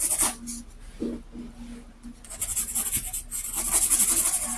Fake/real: real